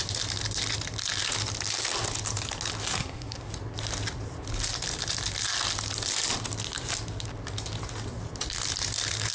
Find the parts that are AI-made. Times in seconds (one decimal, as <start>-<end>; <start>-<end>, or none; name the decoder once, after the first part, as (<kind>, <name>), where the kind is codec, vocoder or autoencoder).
3.0-3.5 (codec, SNAC)